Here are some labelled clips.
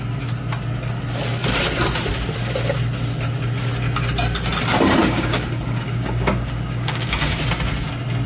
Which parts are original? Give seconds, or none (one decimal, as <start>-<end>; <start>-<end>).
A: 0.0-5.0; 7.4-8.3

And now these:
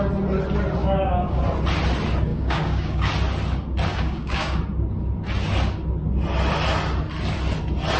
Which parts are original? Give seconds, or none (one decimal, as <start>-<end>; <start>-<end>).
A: 0.0-0.8; 1.4-2.3; 3.1-3.9; 4.6-8.0

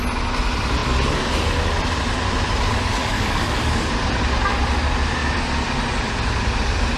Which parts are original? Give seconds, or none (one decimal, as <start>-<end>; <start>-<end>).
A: 0.0-2.7; 3.9-7.0

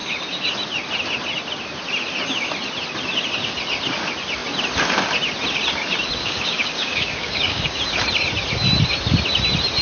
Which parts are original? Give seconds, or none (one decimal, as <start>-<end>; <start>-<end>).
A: 0.0-6.2; 7.7-9.8